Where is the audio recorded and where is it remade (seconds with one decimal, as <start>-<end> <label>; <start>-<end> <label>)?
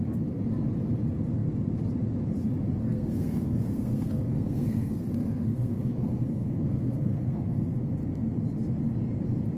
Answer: 0.0-2.8 recorded; 2.8-7.9 remade; 7.9-9.6 recorded